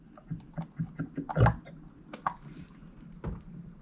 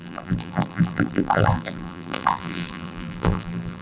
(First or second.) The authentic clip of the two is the first